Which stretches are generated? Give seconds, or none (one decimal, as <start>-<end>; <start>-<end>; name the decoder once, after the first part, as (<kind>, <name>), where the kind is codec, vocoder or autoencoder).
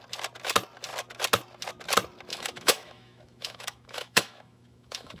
2.3-5.2 (autoencoder, DAC-VAE)